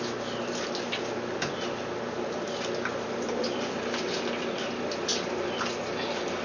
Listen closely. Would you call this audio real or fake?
real